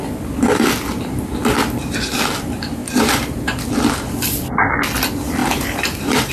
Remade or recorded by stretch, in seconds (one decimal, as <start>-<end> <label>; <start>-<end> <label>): 0.0-2.8 recorded; 2.8-3.7 remade; 3.7-5.4 recorded; 5.4-6.3 remade